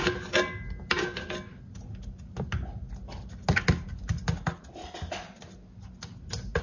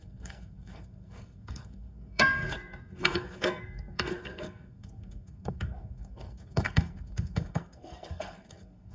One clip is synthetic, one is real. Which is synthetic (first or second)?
second